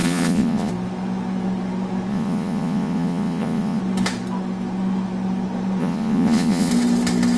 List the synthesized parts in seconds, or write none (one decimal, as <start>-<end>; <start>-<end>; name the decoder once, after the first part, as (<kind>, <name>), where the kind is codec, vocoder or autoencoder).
0.0-0.7 (vocoder, Vocos); 2.1-3.8; 5.8-6.7